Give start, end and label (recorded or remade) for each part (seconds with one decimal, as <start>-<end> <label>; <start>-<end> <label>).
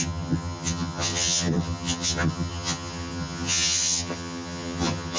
0.0-5.2 remade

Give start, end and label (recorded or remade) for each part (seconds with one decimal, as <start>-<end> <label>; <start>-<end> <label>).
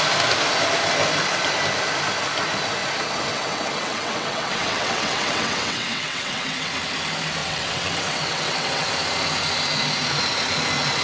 0.0-3.3 recorded; 3.3-6.7 remade; 6.7-7.4 recorded; 7.4-8.9 remade; 8.9-11.0 recorded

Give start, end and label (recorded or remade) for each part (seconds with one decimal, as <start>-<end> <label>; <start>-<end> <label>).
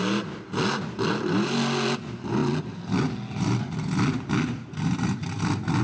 0.0-5.8 recorded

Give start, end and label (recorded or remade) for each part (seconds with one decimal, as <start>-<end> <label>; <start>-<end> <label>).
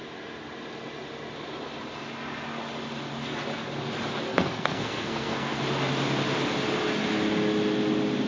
0.0-4.3 recorded; 4.3-5.6 remade; 5.6-8.3 recorded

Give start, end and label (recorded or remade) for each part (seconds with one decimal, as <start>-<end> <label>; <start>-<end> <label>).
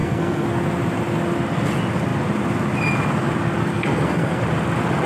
0.0-0.5 remade; 0.5-3.7 recorded; 3.7-4.4 remade; 4.4-5.1 recorded